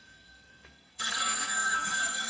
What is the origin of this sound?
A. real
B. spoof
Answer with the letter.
B